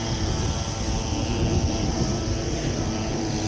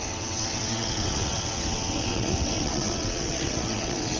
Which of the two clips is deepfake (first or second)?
second